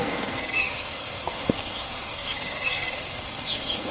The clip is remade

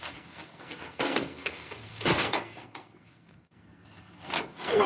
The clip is remade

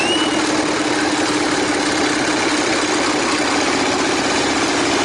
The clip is recorded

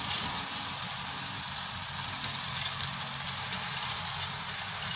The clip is recorded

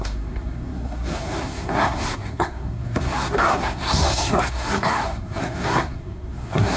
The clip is remade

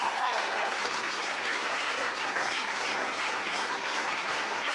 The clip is remade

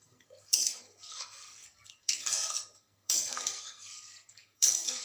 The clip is remade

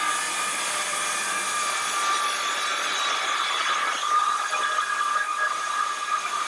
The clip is recorded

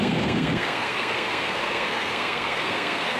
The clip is remade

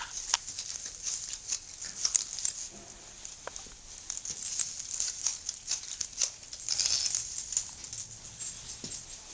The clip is recorded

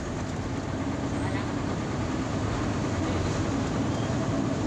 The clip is recorded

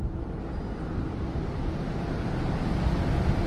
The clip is recorded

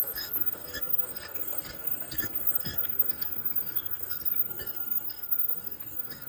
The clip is remade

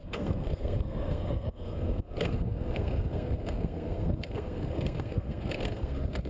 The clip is remade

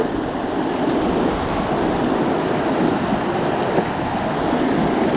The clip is recorded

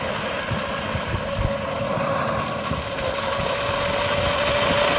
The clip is recorded